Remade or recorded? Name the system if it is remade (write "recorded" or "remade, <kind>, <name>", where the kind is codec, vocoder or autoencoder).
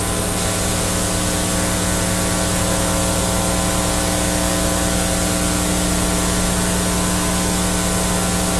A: recorded